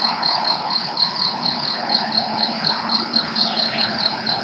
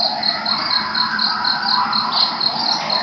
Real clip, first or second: second